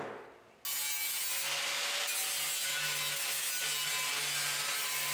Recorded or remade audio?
recorded